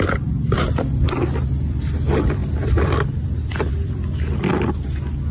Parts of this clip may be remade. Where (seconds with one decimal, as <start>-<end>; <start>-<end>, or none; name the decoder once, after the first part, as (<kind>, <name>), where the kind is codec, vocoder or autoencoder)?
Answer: none